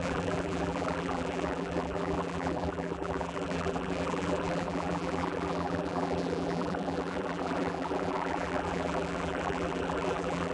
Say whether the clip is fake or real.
fake